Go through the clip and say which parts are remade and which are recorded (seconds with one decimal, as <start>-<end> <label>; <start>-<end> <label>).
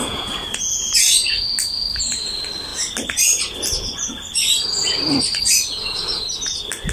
0.0-0.8 remade; 0.8-6.9 recorded